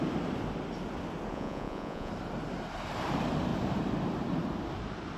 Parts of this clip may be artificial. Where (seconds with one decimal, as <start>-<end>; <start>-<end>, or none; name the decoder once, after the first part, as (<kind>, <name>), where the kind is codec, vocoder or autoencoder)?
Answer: 1.3-2.1 (vocoder, Vocos)